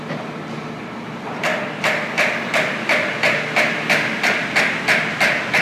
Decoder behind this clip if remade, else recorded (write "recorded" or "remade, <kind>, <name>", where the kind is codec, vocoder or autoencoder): recorded